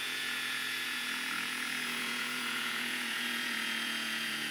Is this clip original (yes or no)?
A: no